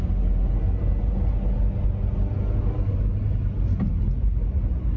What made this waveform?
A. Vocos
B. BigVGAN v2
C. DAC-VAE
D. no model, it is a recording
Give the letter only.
D